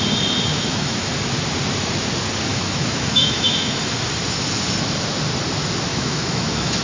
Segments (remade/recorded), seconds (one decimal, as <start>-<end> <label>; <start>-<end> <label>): 0.0-0.5 recorded; 0.5-1.1 remade; 1.1-2.5 recorded; 2.5-3.8 remade; 3.8-5.9 recorded; 5.9-6.8 remade